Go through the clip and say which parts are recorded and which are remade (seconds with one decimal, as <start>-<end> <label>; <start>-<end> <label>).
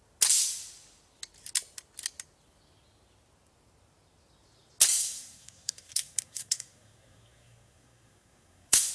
0.0-5.0 recorded; 5.0-8.9 remade